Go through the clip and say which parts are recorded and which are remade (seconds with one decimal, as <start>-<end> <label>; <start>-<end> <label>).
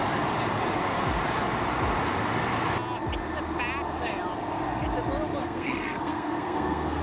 0.0-5.4 recorded; 5.4-7.0 remade